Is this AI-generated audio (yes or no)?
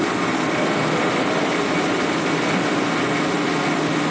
no